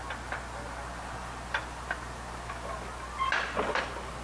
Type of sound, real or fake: real